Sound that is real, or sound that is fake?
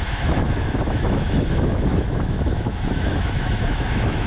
fake